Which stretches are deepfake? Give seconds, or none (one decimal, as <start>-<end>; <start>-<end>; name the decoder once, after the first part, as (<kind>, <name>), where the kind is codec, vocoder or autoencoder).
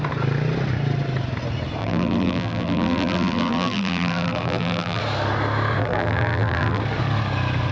1.8-5.0 (vocoder, BigVGAN v2); 5.8-6.8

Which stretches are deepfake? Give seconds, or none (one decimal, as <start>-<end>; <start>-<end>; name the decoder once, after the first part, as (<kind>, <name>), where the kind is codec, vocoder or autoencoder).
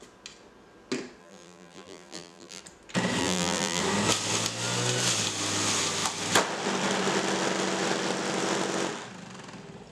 1.2-2.6 (vocoder, BigVGAN v2); 3.2-3.8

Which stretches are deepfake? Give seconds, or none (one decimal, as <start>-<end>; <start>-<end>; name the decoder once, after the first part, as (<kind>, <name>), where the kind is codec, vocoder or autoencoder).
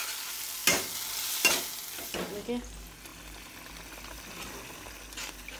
3.1-3.7 (vocoder, BigVGAN v2)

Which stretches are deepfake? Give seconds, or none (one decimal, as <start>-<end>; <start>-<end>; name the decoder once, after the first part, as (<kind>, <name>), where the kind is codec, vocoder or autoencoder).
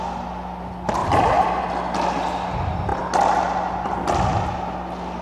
1.0-1.6 (vocoder, BigVGAN v2)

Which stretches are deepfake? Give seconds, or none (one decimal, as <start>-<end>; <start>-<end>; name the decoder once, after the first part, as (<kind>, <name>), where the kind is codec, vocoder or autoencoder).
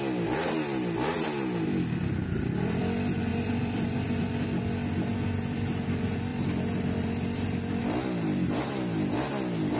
3.3-4.2 (vocoder, BigVGAN v2); 6.3-7.8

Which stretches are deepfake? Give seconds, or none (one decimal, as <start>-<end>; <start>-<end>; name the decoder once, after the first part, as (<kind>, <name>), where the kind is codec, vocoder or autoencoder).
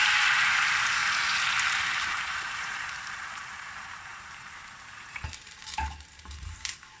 0.0-1.0 (vocoder, BigVGAN v2); 1.8-7.0